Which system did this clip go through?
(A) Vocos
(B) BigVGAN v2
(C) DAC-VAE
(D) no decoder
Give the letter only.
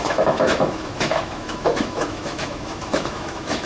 C